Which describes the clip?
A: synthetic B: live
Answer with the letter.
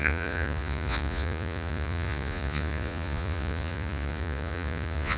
A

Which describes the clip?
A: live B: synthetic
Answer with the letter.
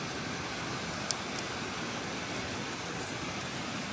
B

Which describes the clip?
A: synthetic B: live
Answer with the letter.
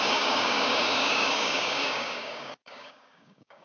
A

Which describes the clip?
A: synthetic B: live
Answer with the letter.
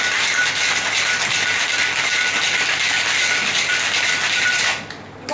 B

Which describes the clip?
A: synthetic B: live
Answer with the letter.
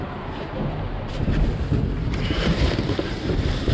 A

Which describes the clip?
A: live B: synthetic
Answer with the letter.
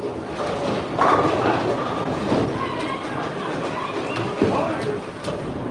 A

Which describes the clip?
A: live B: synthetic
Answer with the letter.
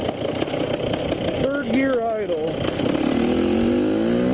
A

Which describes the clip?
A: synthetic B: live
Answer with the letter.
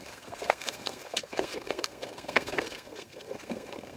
A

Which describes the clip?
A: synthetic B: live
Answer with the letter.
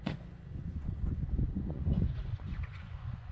A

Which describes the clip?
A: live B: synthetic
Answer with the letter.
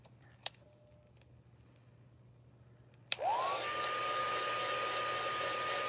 A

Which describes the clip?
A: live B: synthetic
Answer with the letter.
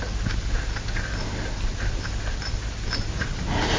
A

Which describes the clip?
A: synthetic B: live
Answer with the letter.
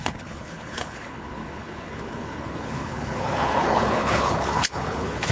A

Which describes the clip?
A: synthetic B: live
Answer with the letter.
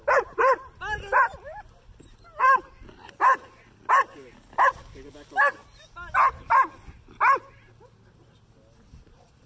B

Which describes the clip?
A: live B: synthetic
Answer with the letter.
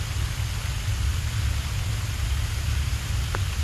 A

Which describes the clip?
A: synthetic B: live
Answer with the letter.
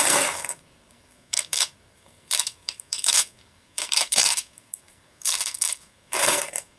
A